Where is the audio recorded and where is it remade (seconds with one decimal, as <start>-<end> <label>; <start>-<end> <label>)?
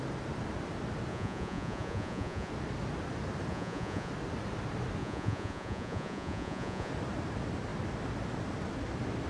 0.0-1.1 recorded; 1.1-2.5 remade; 2.5-3.5 recorded; 3.5-4.1 remade; 4.1-5.0 recorded; 5.0-6.9 remade; 6.9-9.3 recorded